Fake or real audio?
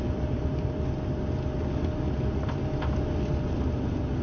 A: real